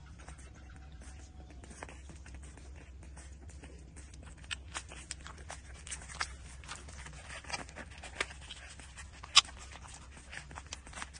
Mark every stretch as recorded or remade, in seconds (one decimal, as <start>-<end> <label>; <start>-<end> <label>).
0.0-1.0 remade; 1.0-11.2 recorded

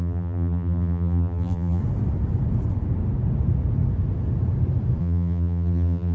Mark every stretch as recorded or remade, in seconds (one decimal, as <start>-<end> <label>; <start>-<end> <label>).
0.0-1.8 remade; 1.8-5.0 recorded; 5.0-6.1 remade

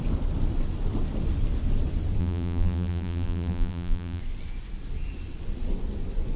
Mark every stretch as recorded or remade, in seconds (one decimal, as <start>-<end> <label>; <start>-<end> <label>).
0.0-2.2 recorded; 2.2-4.2 remade; 4.2-6.4 recorded